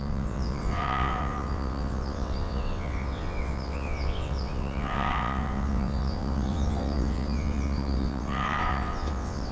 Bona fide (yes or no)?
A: no